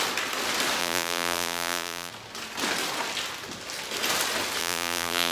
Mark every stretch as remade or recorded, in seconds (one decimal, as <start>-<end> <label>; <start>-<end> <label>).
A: 0.0-0.8 recorded; 0.8-2.1 remade; 2.1-4.6 recorded; 4.6-5.3 remade